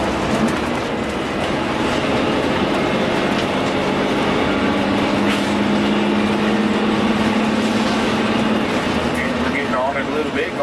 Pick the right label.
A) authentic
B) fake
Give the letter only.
A